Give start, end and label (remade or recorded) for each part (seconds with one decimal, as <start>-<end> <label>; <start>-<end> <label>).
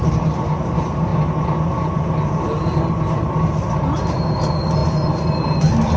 0.0-6.0 recorded